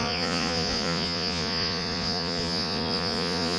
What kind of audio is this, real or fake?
fake